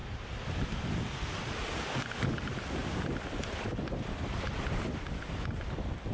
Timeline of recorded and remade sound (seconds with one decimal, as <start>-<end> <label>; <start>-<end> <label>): 0.0-2.8 recorded; 2.8-6.1 remade